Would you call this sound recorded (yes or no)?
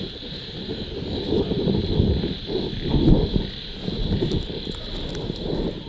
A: yes